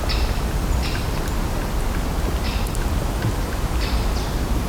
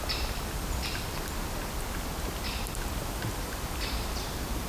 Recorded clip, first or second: first